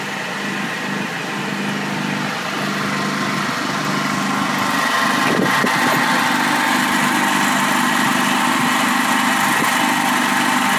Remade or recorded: recorded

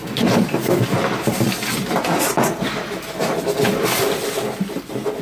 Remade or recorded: recorded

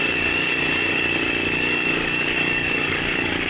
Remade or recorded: remade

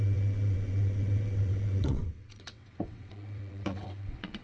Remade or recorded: remade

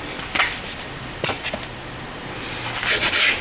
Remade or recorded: recorded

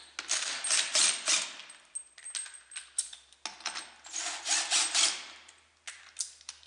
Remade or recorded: recorded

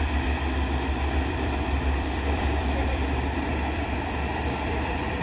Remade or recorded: remade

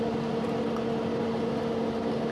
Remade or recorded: recorded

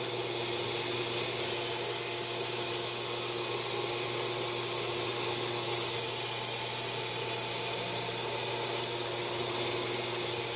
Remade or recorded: recorded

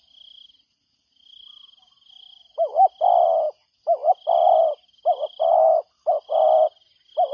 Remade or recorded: recorded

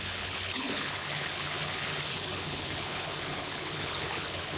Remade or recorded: remade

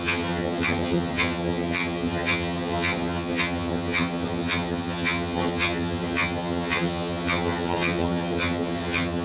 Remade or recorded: remade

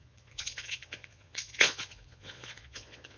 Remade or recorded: remade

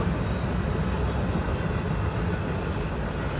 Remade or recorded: recorded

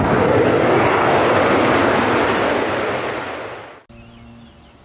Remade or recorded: recorded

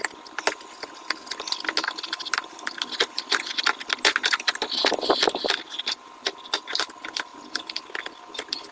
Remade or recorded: recorded